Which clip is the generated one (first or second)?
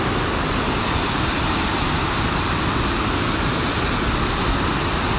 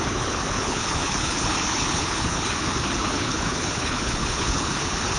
second